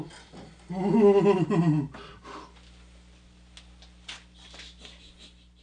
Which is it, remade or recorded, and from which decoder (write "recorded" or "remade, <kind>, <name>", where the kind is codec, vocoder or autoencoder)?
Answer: recorded